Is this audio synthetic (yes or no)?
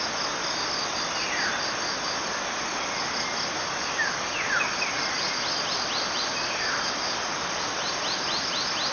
no